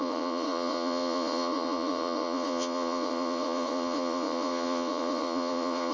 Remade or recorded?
remade